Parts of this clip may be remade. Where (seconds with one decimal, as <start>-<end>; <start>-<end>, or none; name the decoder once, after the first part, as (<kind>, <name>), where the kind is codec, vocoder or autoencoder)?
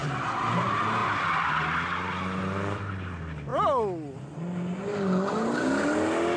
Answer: none